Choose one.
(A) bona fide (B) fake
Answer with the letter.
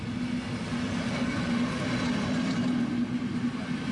A